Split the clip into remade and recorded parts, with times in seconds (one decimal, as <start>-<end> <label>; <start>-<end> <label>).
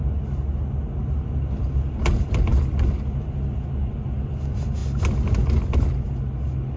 0.0-6.8 recorded